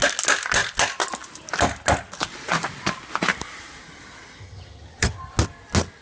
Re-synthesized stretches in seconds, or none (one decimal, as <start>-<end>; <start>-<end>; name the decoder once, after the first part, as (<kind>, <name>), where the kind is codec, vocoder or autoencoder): 4.4-5.2 (vocoder, HiFi-GAN)

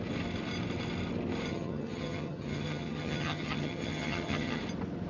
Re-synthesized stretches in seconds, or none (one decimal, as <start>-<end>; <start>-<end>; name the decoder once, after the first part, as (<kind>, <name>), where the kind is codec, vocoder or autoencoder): 1.5-4.6 (vocoder, HiFi-GAN)

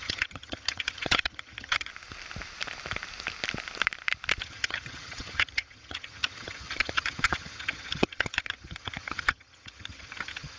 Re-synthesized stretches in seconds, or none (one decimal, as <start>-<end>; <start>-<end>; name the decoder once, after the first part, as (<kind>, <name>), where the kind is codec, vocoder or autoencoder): 0.0-1.9 (vocoder, HiFi-GAN); 4.4-10.6

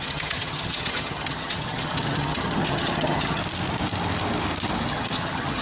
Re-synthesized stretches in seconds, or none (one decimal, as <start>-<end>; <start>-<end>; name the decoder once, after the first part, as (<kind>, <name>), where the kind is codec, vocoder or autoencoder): 0.0-3.4 (vocoder, HiFi-GAN); 4.9-5.6

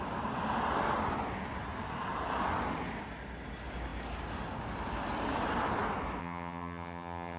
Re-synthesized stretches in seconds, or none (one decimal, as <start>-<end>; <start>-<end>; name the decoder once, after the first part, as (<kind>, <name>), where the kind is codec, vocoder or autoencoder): 6.2-7.4 (vocoder, HiFi-GAN)

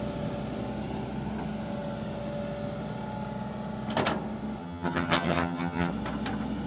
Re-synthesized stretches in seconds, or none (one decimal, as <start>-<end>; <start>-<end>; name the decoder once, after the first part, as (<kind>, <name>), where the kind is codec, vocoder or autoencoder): 4.6-5.9 (vocoder, HiFi-GAN)

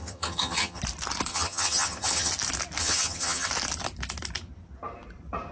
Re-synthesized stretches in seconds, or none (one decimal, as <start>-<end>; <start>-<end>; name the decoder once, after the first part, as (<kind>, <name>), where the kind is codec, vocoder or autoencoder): 0.0-0.8 (vocoder, HiFi-GAN); 1.3-2.3; 2.8-3.5

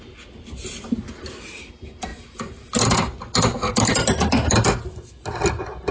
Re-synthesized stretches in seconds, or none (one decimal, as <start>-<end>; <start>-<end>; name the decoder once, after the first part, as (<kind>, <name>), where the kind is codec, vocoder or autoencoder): none